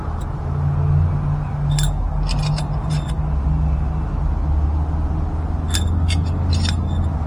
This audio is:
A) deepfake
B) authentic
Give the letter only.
B